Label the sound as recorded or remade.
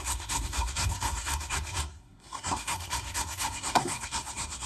remade